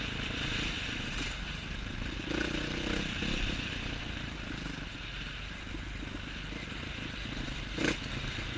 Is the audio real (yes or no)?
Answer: yes